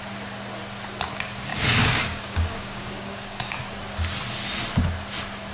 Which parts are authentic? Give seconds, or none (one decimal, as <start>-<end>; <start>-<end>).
0.0-1.5; 3.6-5.5